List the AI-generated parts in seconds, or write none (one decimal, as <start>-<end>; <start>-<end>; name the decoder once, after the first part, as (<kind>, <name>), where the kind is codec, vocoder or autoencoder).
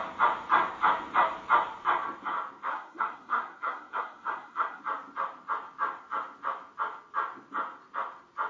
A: 2.7-4.8 (codec, SNAC)